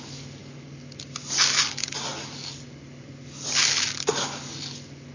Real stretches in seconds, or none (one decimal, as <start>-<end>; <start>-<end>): 0.0-5.1